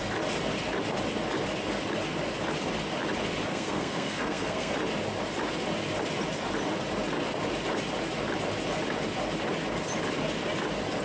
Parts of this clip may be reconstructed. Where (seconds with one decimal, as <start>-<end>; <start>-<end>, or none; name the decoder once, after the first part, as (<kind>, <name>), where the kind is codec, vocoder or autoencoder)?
3.5-4.7 (codec, SNAC)